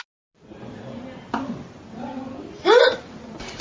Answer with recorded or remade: recorded